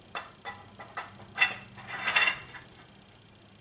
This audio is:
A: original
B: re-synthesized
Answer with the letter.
A